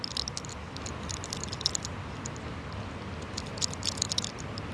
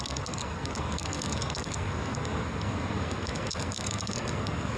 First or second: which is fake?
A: second